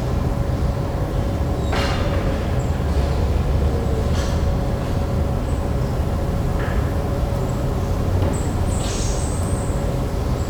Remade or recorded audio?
recorded